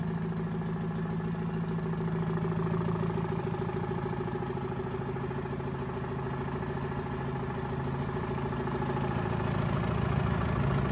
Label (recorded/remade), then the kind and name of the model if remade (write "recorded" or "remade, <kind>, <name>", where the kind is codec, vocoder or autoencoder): recorded